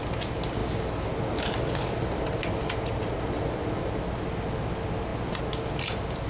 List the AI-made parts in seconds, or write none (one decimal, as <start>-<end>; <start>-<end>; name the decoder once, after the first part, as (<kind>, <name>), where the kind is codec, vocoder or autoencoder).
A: none